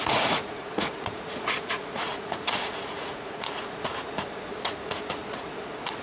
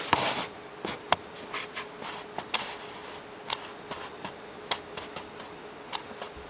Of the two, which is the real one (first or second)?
second